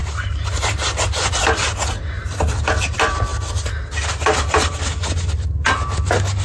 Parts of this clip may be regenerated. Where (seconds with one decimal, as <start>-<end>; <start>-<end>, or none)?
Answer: none